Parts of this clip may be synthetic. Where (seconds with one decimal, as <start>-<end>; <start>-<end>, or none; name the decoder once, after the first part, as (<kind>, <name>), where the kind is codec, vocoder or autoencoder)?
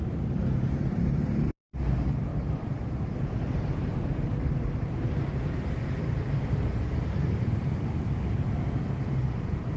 0.0-5.8 (vocoder, BigVGAN v2); 6.7-9.8